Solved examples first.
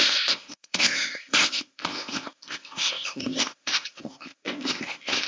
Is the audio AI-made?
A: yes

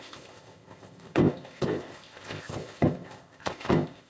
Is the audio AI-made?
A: yes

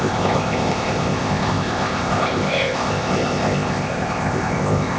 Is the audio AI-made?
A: yes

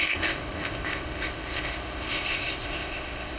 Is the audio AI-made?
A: yes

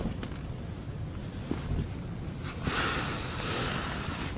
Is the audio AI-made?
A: no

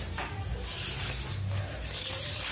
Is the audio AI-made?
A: no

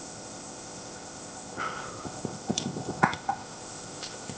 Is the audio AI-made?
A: yes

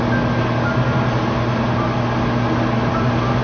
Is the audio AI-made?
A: no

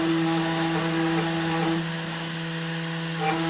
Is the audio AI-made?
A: no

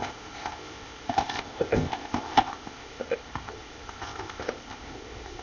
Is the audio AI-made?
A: yes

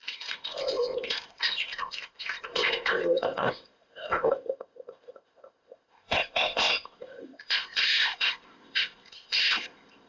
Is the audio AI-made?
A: yes